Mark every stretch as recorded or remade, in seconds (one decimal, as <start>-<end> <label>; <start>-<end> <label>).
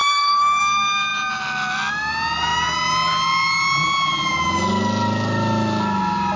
0.0-0.6 remade; 0.6-6.4 recorded